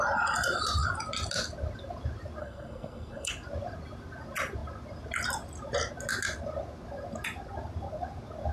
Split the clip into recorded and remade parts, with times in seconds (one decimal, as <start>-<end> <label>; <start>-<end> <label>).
0.0-2.4 recorded; 2.4-3.3 remade; 3.3-8.5 recorded